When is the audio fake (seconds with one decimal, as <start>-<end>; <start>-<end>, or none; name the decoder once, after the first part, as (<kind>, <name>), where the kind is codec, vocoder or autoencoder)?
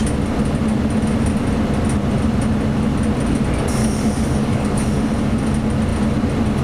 3.8-5.0 (codec, DAC)